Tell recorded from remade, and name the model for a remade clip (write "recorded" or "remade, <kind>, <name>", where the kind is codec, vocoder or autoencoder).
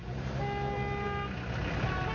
recorded